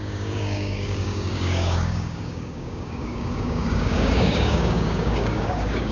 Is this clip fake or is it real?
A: fake